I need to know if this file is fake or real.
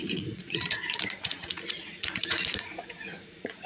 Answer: fake